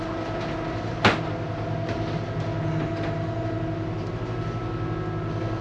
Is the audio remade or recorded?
recorded